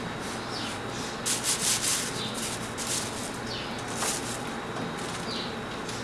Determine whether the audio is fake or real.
real